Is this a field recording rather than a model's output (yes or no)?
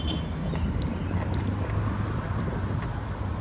yes